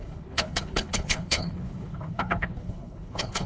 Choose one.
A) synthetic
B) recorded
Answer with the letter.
A